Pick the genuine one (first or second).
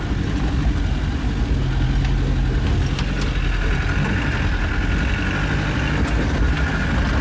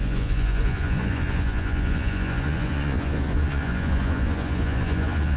first